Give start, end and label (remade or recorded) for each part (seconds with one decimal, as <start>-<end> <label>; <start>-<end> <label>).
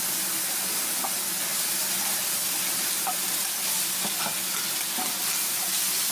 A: 0.0-6.1 recorded